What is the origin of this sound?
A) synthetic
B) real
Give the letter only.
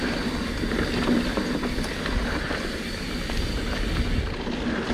B